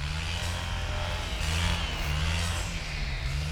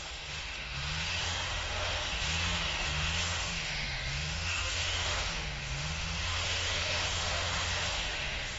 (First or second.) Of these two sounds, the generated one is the second